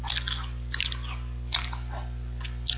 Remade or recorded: recorded